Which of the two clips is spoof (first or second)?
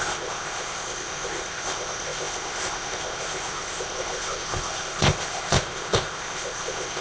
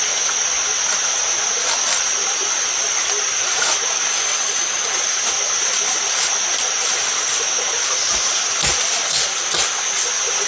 first